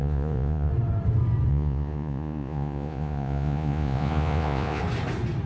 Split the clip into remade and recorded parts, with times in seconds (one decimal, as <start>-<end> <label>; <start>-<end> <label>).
0.0-0.7 remade; 0.7-1.5 recorded; 1.5-4.8 remade; 4.8-5.5 recorded